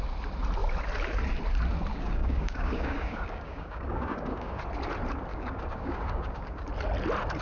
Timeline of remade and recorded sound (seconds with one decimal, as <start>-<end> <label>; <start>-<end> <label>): 0.0-1.9 recorded; 1.9-4.6 remade; 4.6-5.3 recorded; 5.3-6.7 remade; 6.7-7.4 recorded